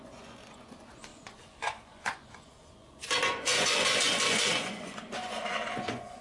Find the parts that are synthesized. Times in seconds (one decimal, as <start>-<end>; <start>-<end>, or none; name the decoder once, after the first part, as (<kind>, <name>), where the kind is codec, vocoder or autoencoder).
0.0-6.2 (vocoder, Vocos)